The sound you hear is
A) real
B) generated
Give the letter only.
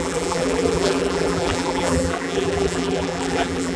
B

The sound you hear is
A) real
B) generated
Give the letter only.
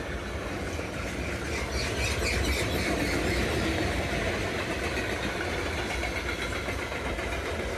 A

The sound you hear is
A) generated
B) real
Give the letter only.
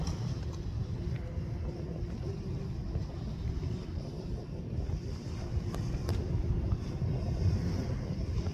B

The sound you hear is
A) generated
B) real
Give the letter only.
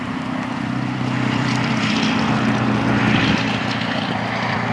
A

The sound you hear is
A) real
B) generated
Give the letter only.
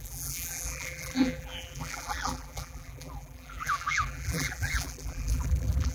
B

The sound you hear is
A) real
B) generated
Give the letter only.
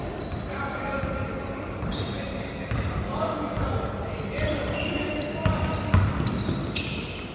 B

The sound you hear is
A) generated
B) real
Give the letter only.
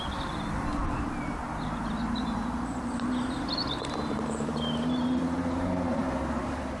A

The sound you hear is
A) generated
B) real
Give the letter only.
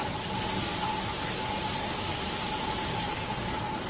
B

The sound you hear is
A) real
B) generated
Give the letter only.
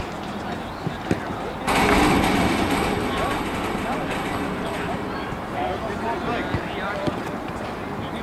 B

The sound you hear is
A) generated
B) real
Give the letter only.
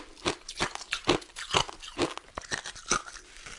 B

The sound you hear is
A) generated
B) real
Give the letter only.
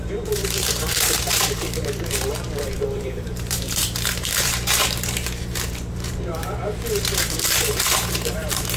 A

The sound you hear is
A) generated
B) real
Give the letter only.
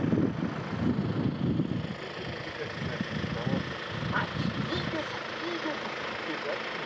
B